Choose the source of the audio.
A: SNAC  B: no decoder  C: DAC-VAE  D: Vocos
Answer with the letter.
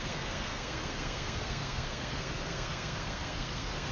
A